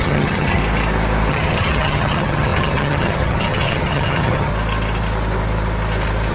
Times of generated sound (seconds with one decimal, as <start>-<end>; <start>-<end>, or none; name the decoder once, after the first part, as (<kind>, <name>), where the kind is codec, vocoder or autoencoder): 0.0-0.6 (vocoder, HiFi-GAN); 1.3-4.5